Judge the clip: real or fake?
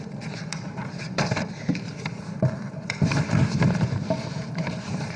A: fake